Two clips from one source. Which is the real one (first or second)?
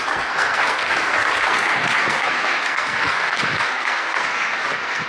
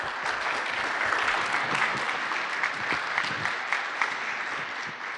second